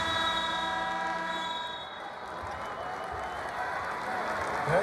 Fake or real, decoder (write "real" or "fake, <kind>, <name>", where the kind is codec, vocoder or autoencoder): real